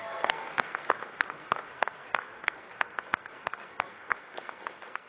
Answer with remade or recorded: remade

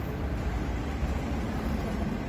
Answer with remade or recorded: recorded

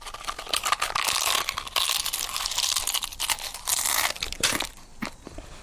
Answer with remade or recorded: recorded